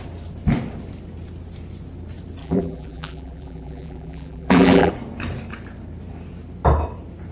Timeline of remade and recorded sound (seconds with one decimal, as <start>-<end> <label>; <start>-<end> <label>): 0.0-2.4 recorded; 2.4-4.9 remade; 4.9-7.3 recorded